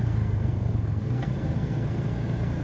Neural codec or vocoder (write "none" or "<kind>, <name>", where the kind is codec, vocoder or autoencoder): codec, SNAC